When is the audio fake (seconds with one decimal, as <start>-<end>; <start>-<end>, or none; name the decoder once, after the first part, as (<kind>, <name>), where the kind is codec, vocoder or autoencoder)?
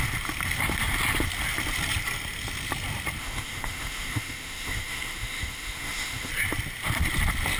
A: 3.2-6.3 (autoencoder, DAC-VAE)